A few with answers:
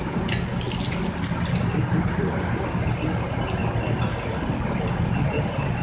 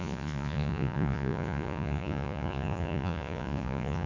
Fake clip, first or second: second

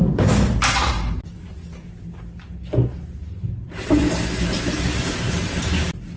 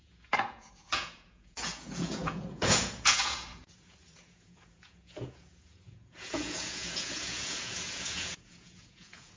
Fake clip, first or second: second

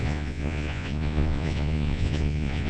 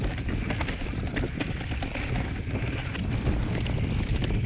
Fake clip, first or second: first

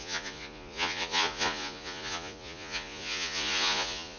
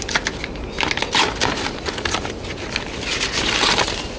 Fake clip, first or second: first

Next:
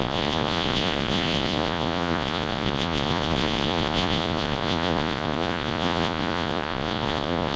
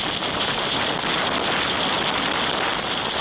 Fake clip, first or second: first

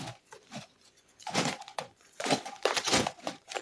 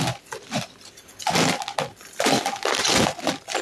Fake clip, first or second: first